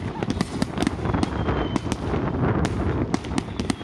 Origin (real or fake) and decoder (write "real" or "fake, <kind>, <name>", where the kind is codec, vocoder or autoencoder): real